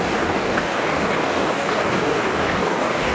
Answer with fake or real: fake